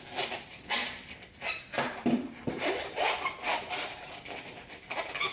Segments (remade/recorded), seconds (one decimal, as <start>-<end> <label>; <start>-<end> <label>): 0.0-0.8 recorded; 0.8-3.1 remade; 3.1-5.3 recorded